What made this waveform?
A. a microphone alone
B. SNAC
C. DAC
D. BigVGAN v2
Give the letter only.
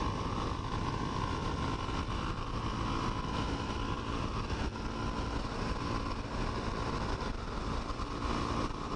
A